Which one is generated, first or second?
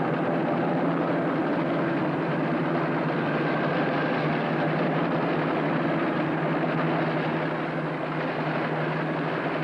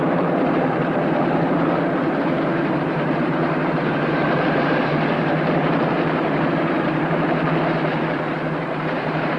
second